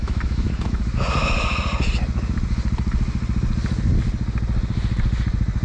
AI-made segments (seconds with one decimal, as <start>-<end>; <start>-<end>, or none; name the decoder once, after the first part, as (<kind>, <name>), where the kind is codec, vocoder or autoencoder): 0.0-0.8 (autoencoder, DAC-VAE)